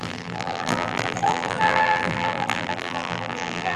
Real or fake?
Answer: fake